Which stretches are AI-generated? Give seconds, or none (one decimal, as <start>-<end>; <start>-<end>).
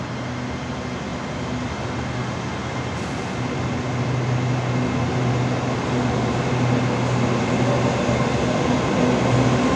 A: none